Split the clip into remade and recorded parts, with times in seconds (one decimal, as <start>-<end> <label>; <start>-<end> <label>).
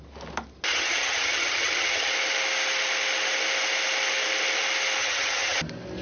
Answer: 0.0-0.7 recorded; 0.7-2.1 remade; 2.1-5.0 recorded; 5.0-5.6 remade; 5.6-6.0 recorded